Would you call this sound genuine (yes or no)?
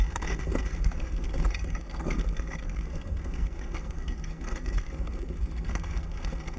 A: no